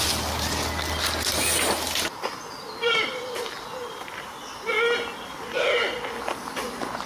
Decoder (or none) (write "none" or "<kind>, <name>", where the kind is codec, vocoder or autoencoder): none